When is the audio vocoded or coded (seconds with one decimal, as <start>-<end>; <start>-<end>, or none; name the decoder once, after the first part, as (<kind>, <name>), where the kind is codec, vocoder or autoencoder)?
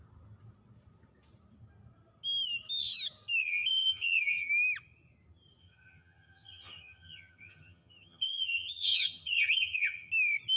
3.4-4.5 (vocoder, HiFi-GAN); 5.6-10.1